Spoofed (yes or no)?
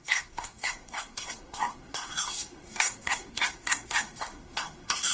yes